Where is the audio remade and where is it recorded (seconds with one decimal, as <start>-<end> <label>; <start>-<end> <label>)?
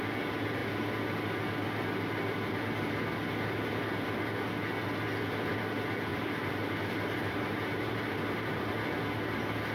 0.0-6.1 recorded; 6.1-8.7 remade; 8.7-9.7 recorded